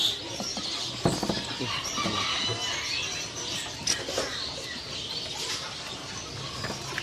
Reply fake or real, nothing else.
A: real